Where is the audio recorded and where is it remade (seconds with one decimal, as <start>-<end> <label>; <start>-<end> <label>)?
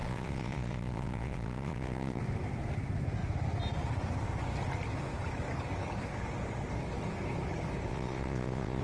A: 0.0-2.2 remade; 2.2-7.9 recorded; 7.9-8.8 remade